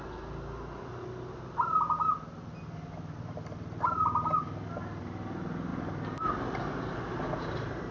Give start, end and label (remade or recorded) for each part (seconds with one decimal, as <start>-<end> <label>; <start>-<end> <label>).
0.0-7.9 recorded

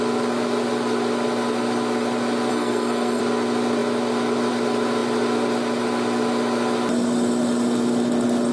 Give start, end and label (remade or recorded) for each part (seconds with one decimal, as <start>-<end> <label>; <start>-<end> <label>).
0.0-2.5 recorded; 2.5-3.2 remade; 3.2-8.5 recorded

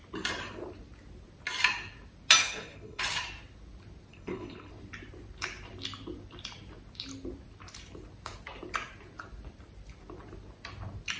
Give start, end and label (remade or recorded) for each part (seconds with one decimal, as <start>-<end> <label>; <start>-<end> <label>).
0.0-2.4 recorded; 2.4-3.0 remade; 3.0-4.1 recorded; 4.1-4.7 remade; 4.7-11.2 recorded

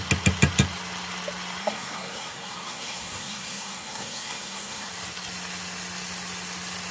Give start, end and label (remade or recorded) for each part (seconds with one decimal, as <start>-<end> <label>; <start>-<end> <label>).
0.0-1.6 recorded; 1.6-4.9 remade; 4.9-6.9 recorded

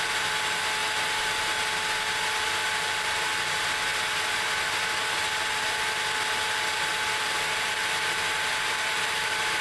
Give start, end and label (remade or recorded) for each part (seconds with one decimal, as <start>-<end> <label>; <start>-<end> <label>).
0.0-6.9 recorded; 6.9-7.8 remade; 7.8-8.5 recorded; 8.5-9.6 remade

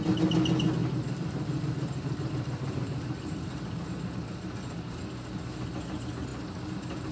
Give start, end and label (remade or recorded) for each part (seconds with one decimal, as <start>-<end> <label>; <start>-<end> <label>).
0.0-0.8 recorded; 0.8-5.0 remade; 5.0-7.1 recorded